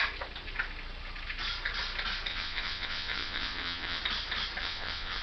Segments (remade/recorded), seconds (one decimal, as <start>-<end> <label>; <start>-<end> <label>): 0.0-2.3 recorded; 2.3-4.0 remade; 4.0-4.6 recorded; 4.6-5.2 remade